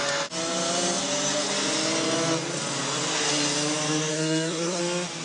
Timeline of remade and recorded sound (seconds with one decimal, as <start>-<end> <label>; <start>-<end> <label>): 0.0-4.1 recorded; 4.1-4.8 remade; 4.8-5.2 recorded